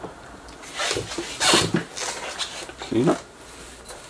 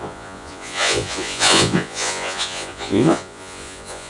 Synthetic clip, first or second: second